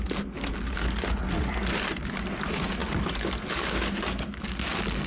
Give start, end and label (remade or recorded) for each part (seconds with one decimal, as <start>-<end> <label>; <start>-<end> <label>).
0.0-5.1 recorded